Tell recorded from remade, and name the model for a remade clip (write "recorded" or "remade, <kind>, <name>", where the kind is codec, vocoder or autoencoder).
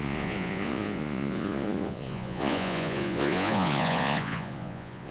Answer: remade, vocoder, Vocos